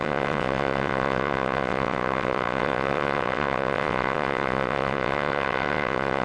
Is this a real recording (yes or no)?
no